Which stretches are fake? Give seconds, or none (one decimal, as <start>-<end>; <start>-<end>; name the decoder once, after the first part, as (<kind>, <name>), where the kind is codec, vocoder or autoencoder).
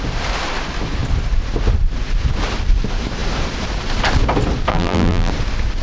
4.7-5.3 (vocoder, BigVGAN v2)